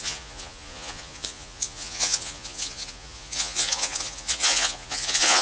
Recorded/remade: remade